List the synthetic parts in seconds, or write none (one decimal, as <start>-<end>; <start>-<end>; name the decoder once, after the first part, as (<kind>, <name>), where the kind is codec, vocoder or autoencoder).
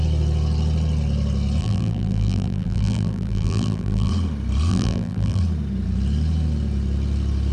1.6-4.1 (vocoder, BigVGAN v2); 4.7-5.4